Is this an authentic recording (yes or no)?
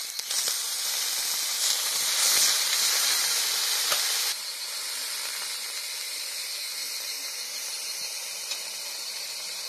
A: yes